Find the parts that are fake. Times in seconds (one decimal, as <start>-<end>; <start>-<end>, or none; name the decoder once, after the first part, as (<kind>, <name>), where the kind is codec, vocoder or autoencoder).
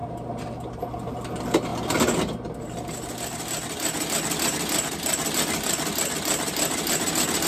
none